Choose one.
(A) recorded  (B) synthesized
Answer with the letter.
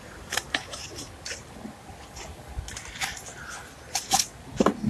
A